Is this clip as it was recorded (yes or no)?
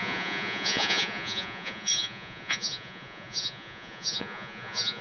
no